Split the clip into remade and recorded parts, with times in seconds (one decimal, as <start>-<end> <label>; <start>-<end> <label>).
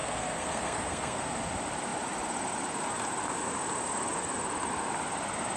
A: 0.0-1.2 remade; 1.2-5.6 recorded